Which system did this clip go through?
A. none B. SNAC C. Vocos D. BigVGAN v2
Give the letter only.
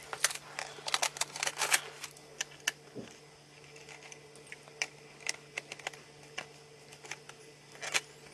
A